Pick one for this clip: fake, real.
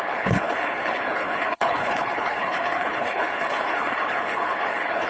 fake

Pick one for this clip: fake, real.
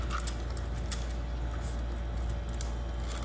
real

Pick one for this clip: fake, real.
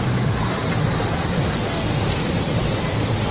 real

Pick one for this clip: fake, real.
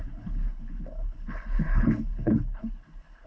fake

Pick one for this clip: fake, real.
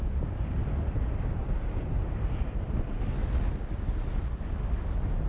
real